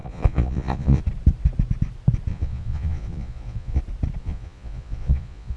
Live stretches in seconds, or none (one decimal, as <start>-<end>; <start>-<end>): 1.0-2.3; 3.8-4.2